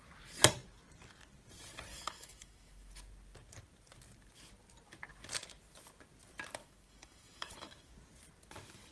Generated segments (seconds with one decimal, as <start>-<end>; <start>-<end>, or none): 1.9-2.9; 6.6-7.9